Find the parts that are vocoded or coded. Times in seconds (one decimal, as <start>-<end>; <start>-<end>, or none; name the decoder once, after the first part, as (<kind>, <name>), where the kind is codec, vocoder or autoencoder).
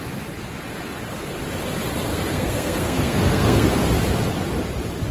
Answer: 2.1-3.7 (codec, SNAC)